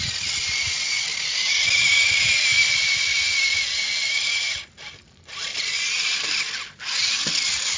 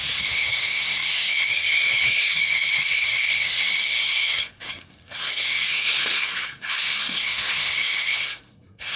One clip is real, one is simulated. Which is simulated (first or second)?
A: second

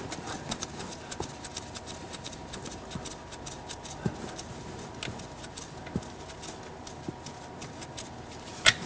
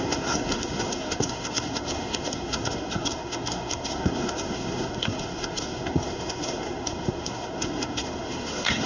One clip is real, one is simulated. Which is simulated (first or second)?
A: second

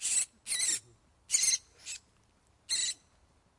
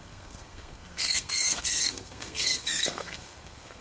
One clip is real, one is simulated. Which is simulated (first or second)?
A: second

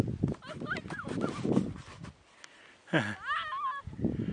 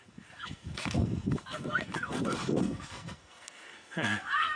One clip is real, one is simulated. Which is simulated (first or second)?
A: second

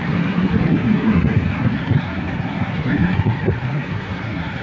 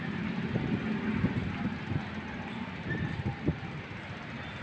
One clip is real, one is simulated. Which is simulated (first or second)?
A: first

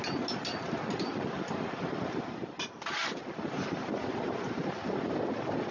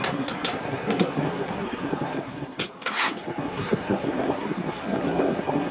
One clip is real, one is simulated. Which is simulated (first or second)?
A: second